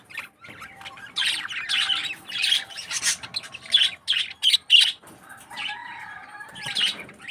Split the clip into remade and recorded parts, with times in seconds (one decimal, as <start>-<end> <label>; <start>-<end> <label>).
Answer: 0.0-2.0 recorded; 2.0-3.0 remade; 3.0-5.8 recorded; 5.8-7.3 remade